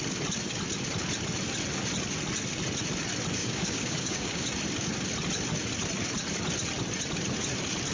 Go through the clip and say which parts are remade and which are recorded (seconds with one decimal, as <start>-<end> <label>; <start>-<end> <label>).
0.0-3.4 recorded; 3.4-4.4 remade; 4.4-7.9 recorded